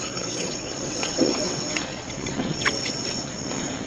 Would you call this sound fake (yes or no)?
yes